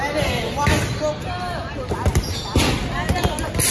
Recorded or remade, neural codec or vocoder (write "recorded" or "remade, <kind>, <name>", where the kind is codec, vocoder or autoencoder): recorded